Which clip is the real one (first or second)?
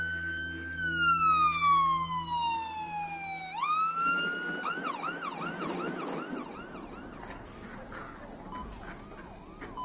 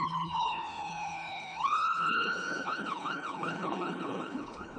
first